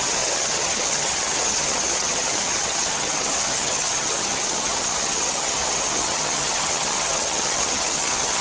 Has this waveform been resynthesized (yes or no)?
yes